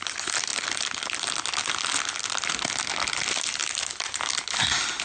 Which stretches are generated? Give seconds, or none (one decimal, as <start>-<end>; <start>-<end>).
none

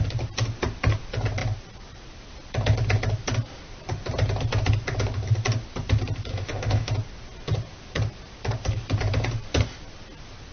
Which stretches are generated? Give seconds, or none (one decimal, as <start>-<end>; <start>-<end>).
6.3-6.9